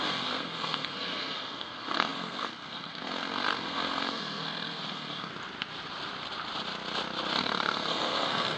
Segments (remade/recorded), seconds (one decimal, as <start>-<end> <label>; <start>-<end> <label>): 0.0-5.3 remade; 5.3-7.4 recorded; 7.4-8.6 remade